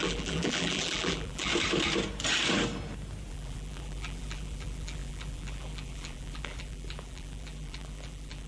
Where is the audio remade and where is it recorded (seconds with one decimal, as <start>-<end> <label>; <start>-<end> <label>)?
0.0-1.5 remade; 1.5-3.3 recorded; 3.3-8.5 remade